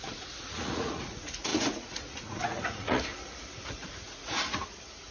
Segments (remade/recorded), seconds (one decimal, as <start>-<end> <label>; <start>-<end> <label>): 0.0-3.1 remade; 3.1-3.7 recorded; 3.7-4.6 remade; 4.6-5.1 recorded